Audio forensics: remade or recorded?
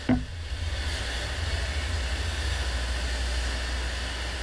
recorded